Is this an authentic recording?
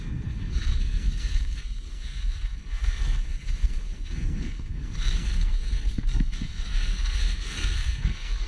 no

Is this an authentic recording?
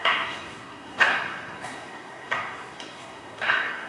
no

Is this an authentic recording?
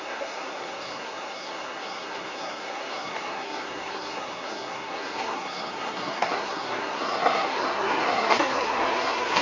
no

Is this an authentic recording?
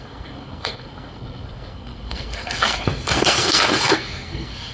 no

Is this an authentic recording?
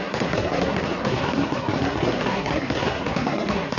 no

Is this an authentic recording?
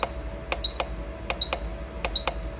yes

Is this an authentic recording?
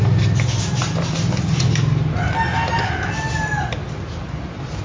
yes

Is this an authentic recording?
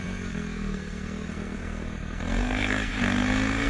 no